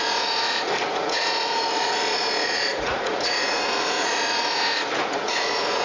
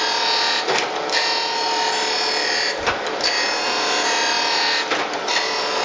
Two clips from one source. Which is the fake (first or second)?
first